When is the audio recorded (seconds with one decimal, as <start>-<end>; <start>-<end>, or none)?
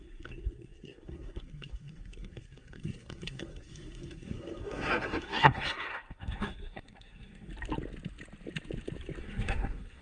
7.5-9.2